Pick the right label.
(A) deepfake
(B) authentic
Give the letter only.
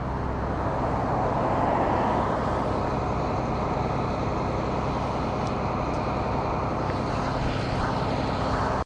B